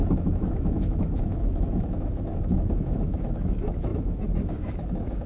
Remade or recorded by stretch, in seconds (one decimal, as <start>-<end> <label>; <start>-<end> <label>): 0.0-5.3 remade